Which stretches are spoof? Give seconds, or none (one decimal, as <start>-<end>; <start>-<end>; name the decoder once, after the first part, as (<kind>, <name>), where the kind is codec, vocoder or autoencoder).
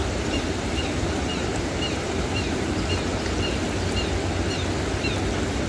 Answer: 0.0-3.4 (vocoder, BigVGAN v2)